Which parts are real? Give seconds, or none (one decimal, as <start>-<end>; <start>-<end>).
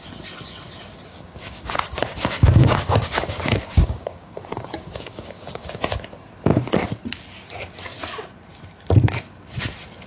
0.0-1.1; 5.7-10.1